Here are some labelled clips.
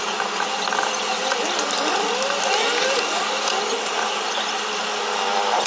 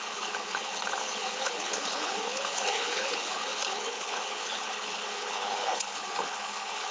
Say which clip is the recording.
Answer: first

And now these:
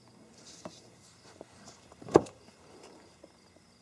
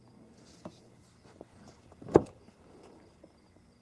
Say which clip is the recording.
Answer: second